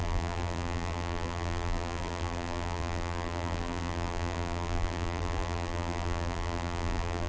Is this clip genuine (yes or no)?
no